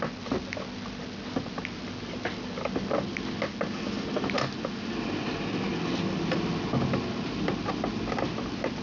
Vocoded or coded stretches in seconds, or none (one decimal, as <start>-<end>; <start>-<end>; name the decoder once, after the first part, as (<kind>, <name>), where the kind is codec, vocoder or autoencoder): none